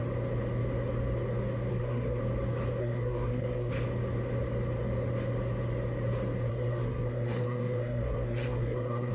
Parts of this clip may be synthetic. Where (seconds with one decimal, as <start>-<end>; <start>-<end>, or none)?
1.7-2.2; 2.8-3.7; 6.5-9.1